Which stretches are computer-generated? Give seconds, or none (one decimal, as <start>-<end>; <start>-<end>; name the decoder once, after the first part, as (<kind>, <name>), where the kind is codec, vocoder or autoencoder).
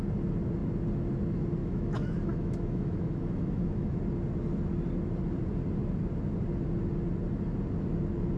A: 1.6-4.0 (autoencoder, DAC-VAE)